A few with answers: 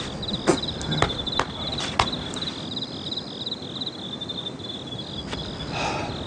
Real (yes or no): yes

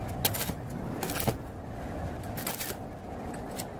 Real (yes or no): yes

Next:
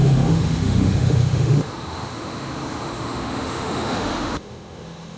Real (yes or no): no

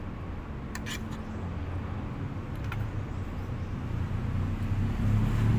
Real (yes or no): yes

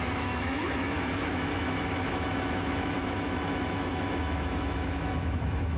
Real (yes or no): no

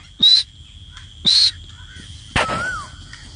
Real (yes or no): yes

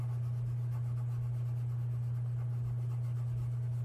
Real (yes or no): yes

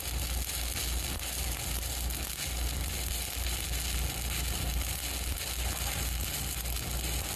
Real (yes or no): yes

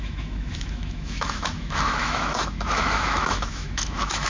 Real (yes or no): no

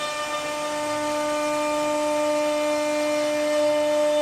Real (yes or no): yes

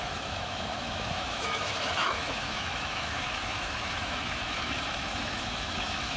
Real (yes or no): no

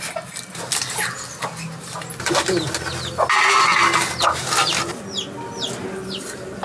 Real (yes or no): yes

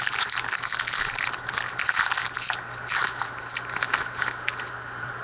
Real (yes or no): yes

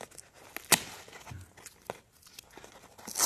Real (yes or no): yes